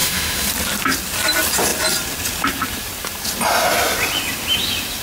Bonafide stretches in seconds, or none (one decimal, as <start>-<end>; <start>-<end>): 0.5-5.0